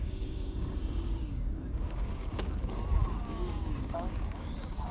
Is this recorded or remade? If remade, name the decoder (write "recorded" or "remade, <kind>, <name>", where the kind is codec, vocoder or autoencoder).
remade, codec, DAC